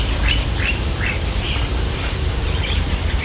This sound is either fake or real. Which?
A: fake